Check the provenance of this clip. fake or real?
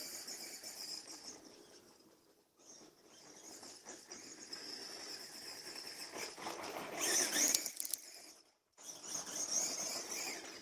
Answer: real